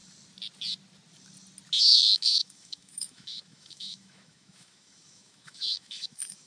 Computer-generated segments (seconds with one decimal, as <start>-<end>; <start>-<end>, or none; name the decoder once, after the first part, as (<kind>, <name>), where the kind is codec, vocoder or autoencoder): 1.8-6.5 (autoencoder, DAC-VAE)